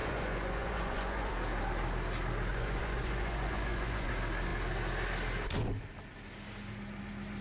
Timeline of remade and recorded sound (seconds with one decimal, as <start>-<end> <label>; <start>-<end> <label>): 0.0-1.3 remade; 1.3-2.5 recorded; 2.5-4.1 remade; 4.1-7.4 recorded